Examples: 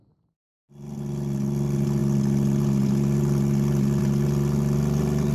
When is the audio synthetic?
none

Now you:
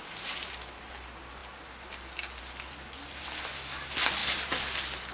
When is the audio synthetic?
none